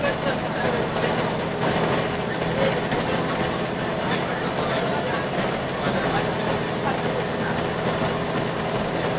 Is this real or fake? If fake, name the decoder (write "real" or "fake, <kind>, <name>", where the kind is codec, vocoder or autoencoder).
real